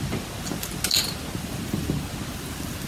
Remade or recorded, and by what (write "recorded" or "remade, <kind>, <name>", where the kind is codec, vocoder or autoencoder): recorded